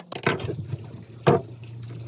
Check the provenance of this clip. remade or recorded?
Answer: recorded